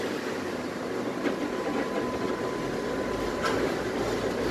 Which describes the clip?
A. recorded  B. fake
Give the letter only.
A